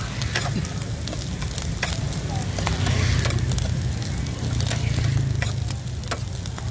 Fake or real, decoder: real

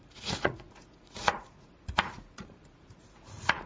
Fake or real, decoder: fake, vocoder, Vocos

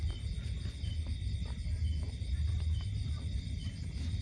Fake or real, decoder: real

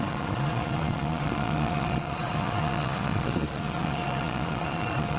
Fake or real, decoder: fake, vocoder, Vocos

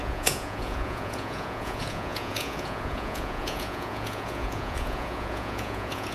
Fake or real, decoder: fake, vocoder, Vocos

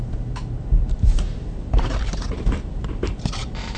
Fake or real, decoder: fake, vocoder, BigVGAN v2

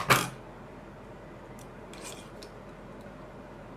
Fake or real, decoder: real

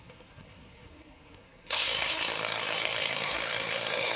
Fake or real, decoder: fake, codec, SNAC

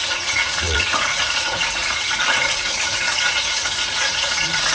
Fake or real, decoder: fake, vocoder, Vocos